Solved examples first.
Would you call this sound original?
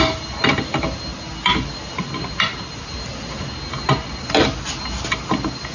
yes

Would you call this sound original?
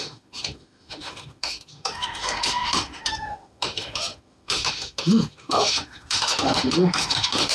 no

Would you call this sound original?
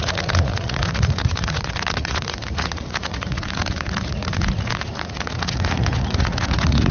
no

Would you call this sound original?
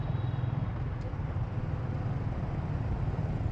yes